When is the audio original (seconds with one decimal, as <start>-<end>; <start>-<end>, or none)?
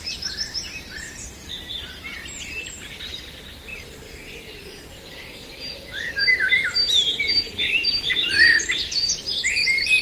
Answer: none